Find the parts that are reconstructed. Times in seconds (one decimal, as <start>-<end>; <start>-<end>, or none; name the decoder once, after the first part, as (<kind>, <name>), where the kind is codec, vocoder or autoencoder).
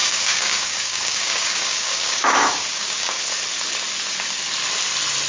0.0-3.2 (codec, DAC)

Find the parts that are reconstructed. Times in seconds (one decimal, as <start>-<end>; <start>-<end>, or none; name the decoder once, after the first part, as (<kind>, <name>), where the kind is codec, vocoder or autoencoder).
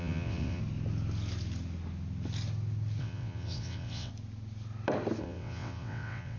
0.0-0.6 (vocoder, WaveNeXt); 3.0-4.1; 5.2-6.4